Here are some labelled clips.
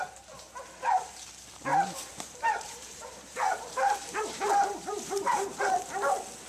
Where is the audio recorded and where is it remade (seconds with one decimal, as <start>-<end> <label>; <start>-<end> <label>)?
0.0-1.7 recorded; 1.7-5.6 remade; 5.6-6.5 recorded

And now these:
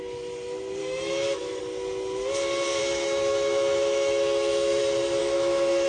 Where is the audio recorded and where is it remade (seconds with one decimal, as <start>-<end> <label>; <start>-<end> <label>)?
0.0-0.8 recorded; 0.8-1.6 remade; 1.6-2.8 recorded; 2.8-4.8 remade; 4.8-5.2 recorded; 5.2-5.9 remade

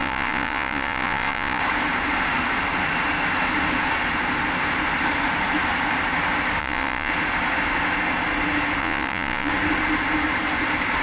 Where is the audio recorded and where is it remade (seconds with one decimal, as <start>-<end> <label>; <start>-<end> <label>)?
0.0-1.6 remade; 1.6-6.6 recorded; 6.6-7.1 remade; 7.1-8.8 recorded; 8.8-9.5 remade; 9.5-11.0 recorded

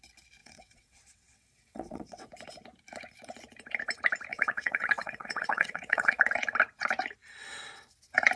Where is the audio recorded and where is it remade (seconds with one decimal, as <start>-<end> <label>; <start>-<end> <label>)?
0.0-0.4 recorded; 0.4-2.3 remade; 2.3-4.3 recorded; 4.3-6.2 remade; 6.2-8.4 recorded

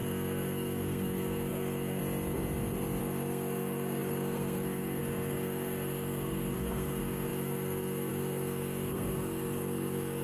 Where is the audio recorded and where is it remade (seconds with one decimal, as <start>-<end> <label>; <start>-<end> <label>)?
0.0-2.0 remade; 2.0-3.0 recorded; 3.0-10.2 remade

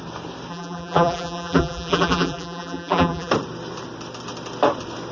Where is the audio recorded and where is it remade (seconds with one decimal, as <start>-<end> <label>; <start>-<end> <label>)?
0.0-0.5 recorded; 0.5-3.3 remade; 3.3-5.1 recorded

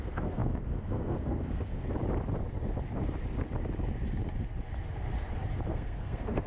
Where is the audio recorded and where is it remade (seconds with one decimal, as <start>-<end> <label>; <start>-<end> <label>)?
0.0-1.8 remade; 1.8-5.7 recorded; 5.7-6.5 remade